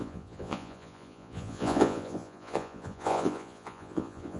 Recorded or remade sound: remade